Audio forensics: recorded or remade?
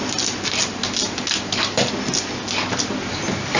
recorded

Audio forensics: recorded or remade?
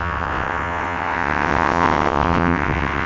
remade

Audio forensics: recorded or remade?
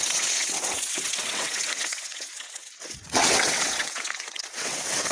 remade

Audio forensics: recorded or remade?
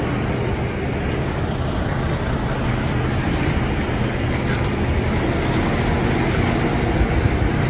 recorded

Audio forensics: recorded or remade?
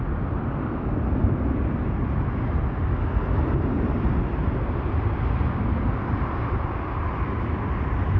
recorded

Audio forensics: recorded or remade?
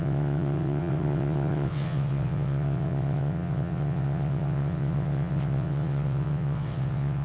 remade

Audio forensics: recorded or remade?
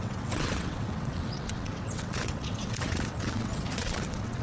remade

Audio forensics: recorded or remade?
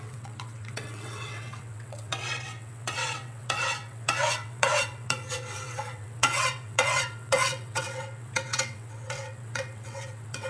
remade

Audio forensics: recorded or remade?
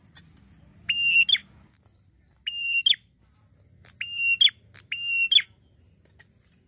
recorded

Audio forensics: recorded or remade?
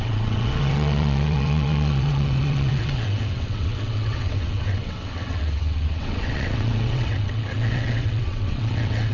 remade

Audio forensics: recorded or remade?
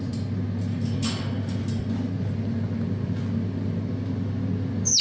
recorded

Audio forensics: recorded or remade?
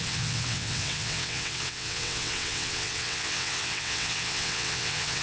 remade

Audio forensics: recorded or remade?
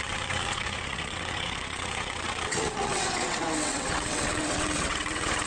remade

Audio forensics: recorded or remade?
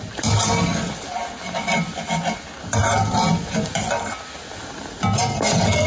recorded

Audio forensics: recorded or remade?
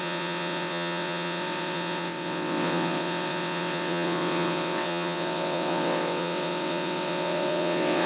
remade